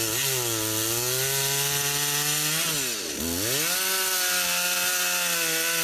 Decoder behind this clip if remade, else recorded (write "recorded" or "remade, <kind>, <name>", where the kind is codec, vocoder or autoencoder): recorded